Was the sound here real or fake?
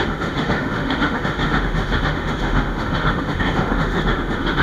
fake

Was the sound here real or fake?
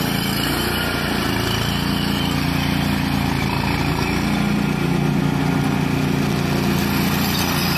real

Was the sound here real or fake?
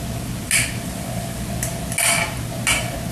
real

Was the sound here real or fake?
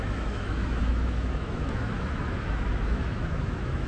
fake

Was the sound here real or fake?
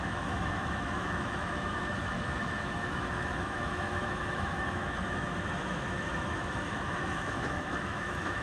fake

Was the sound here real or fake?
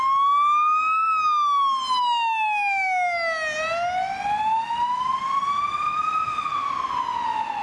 real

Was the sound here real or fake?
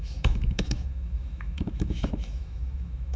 fake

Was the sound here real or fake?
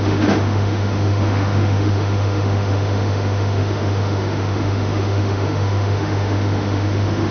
fake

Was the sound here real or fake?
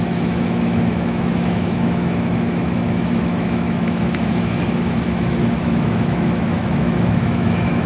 fake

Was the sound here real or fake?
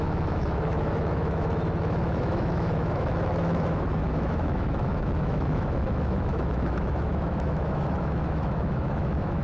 fake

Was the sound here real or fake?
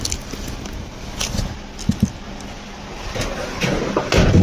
real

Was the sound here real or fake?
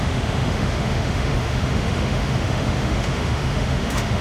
fake